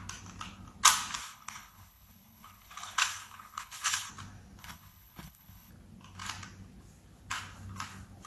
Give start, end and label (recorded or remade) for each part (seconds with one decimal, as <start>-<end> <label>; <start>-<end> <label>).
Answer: 0.0-1.2 recorded; 1.2-4.1 remade; 4.1-4.6 recorded; 4.6-5.7 remade; 5.7-8.3 recorded

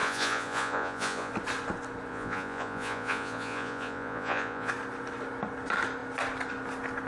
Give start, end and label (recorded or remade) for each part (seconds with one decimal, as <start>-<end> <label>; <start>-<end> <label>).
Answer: 0.0-1.3 remade; 1.3-2.1 recorded; 2.1-4.7 remade; 4.7-7.1 recorded

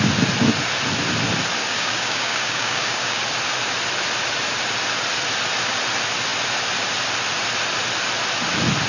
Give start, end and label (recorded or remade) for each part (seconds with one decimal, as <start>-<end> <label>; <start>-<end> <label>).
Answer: 0.0-1.6 recorded; 1.6-3.2 remade; 3.2-8.9 recorded

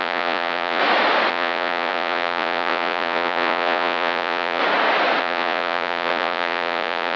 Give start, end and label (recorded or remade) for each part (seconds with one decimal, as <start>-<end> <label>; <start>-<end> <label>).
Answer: 0.0-0.8 remade; 0.8-1.3 recorded; 1.3-4.6 remade; 4.6-5.2 recorded; 5.2-7.2 remade